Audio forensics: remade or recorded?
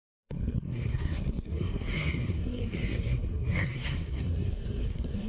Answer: remade